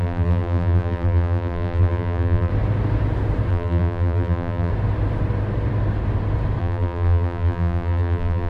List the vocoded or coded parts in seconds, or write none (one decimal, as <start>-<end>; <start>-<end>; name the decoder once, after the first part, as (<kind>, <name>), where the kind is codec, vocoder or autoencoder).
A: 0.0-2.5 (vocoder, BigVGAN v2); 3.5-4.7; 6.6-8.5